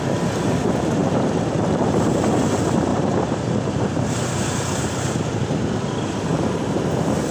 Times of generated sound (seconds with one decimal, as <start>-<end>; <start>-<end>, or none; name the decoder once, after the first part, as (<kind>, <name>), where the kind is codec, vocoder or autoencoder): 1.0-2.3 (vocoder, BigVGAN v2); 2.9-5.7